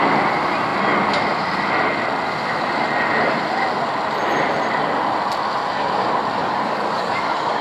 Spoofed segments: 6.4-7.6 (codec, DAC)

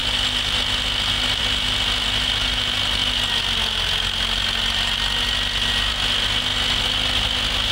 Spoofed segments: none

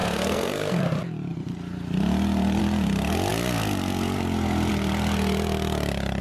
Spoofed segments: 0.0-0.8 (codec, SNAC)